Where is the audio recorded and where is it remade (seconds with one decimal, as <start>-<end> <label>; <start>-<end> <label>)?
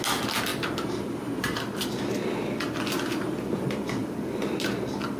0.0-0.5 recorded; 0.5-2.3 remade; 2.3-4.0 recorded; 4.0-5.2 remade